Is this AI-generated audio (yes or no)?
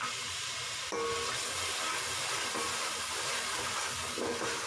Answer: no